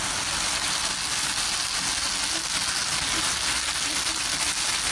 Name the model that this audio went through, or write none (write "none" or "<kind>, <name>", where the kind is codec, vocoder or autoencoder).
none